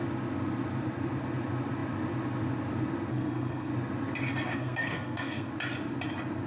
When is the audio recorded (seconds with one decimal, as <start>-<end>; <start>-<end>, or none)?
0.0-3.1; 3.7-4.5; 5.5-6.5